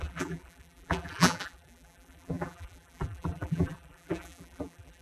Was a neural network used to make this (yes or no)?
yes